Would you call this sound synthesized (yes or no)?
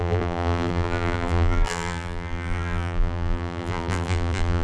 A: yes